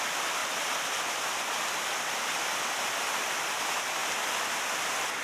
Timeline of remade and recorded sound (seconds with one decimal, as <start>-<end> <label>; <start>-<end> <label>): 0.0-0.4 recorded; 0.4-3.5 remade; 3.5-5.2 recorded